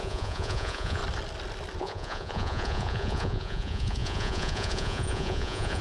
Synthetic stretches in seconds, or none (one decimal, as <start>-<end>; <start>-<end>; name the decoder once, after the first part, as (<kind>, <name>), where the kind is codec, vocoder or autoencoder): 0.0-1.0 (vocoder, Vocos); 1.8-5.8